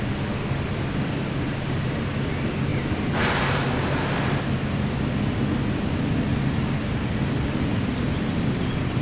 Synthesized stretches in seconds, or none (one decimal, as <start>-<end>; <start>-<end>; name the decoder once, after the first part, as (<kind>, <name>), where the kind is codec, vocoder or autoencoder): none